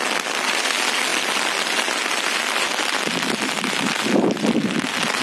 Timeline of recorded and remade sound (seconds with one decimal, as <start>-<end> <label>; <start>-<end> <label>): 0.0-5.2 recorded